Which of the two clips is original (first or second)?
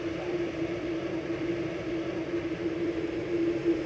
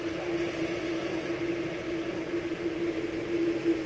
second